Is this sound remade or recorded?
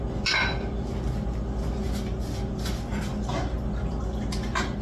recorded